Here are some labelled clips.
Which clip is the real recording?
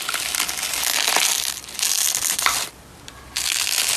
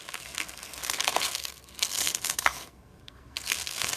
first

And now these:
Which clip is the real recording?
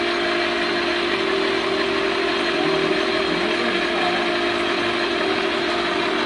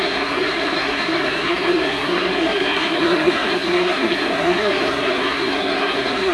first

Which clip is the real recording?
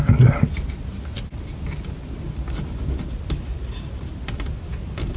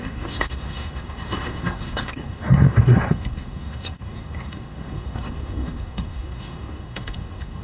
first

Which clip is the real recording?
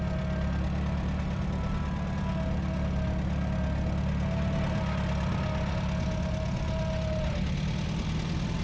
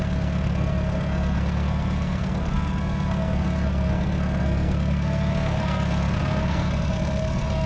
first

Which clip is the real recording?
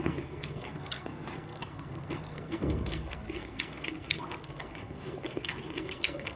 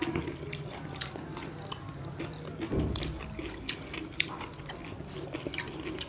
second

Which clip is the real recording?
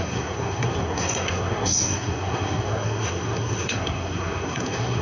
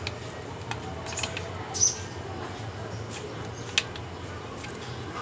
second